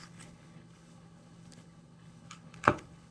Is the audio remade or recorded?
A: remade